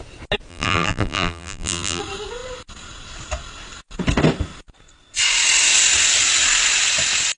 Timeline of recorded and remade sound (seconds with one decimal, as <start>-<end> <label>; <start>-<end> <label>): 0.0-0.5 recorded; 0.5-2.0 remade; 2.0-7.4 recorded